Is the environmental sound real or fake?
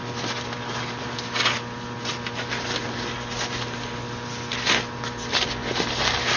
real